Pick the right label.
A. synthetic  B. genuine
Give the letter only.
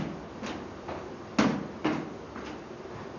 B